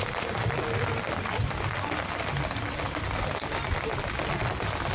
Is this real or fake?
real